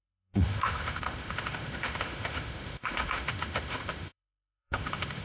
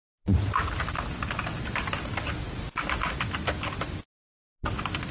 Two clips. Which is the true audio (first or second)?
second